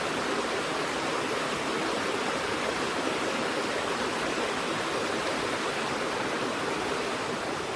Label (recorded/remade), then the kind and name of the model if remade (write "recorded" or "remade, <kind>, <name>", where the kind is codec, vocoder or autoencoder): recorded